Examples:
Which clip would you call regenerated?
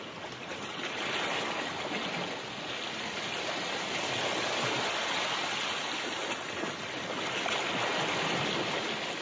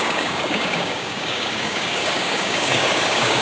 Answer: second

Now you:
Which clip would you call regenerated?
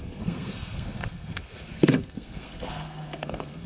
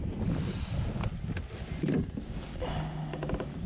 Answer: first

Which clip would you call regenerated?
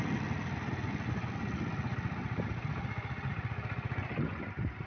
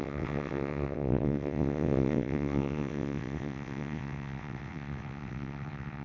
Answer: second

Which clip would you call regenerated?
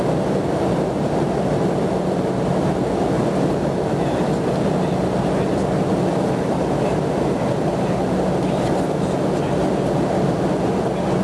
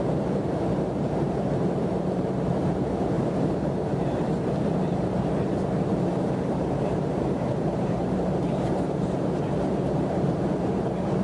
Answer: second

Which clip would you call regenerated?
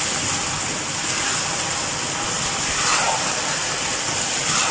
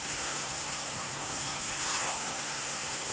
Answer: second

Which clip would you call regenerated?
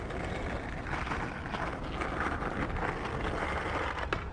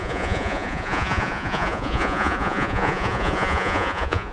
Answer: second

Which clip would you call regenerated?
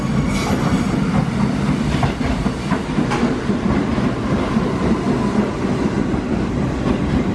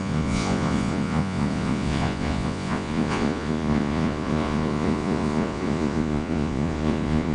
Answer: second